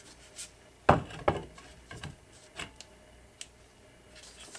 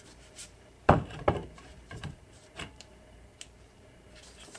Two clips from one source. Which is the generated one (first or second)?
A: second